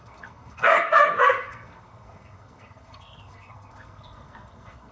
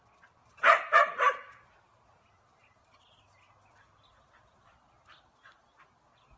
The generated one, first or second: first